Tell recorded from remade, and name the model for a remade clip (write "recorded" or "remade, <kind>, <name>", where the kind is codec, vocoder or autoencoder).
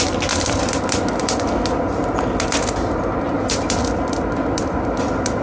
recorded